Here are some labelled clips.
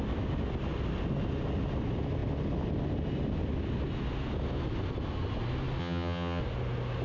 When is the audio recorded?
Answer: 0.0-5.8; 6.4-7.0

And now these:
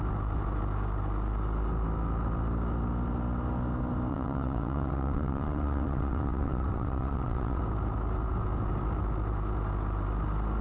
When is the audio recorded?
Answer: 0.0-4.1; 7.6-10.6

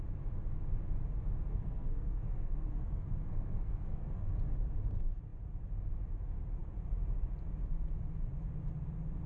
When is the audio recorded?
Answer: 0.0-1.5; 4.3-9.3

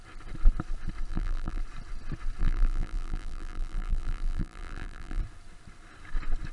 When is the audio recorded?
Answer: 0.0-1.1; 1.6-2.4; 5.2-6.5

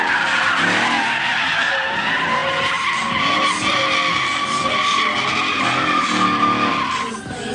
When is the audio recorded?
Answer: 0.0-7.5

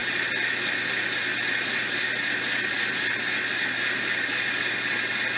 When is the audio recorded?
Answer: 0.0-5.4